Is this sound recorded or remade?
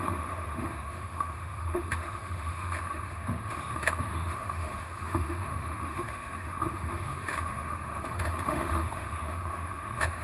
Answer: remade